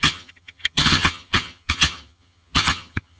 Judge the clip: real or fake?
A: fake